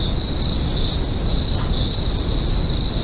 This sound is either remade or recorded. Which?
recorded